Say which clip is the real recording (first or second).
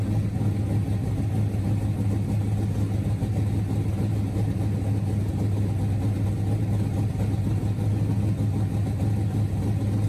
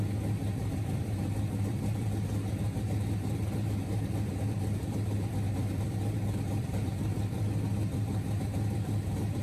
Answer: first